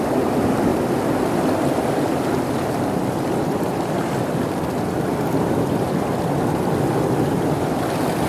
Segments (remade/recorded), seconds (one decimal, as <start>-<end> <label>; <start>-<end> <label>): 0.0-8.3 recorded